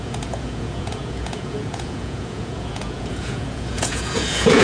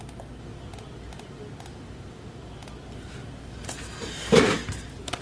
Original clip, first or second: second